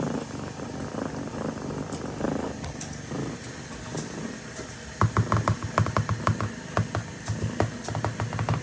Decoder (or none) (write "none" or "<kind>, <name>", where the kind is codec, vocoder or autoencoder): none